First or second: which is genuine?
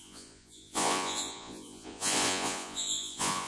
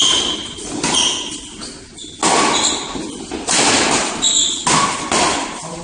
second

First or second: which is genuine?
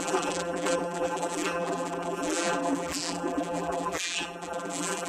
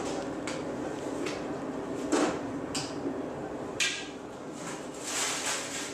second